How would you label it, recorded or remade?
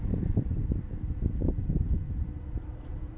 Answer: remade